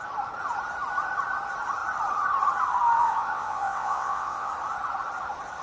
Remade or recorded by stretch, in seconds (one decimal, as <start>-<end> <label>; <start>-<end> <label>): 0.0-3.0 recorded; 3.0-4.5 remade; 4.5-5.6 recorded